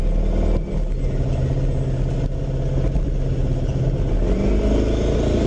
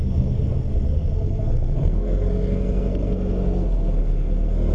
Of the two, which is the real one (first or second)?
first